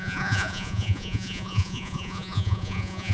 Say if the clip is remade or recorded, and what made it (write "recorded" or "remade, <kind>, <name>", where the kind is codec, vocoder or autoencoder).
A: remade, vocoder, Vocos